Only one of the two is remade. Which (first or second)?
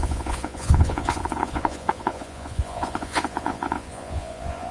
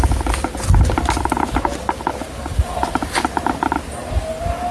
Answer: first